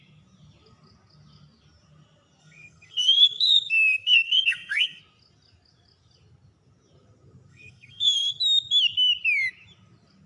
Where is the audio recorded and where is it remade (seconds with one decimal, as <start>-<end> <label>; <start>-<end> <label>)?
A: 0.0-2.4 recorded; 2.4-5.0 remade; 5.0-7.5 recorded; 7.5-8.3 remade; 8.3-10.3 recorded